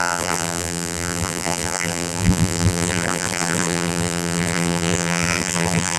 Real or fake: fake